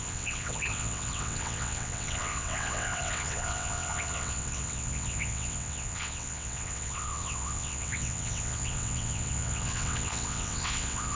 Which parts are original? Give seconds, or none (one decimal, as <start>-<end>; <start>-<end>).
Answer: none